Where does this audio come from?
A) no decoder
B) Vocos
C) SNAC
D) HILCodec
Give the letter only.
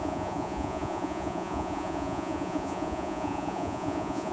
B